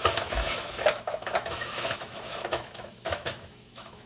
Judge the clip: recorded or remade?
remade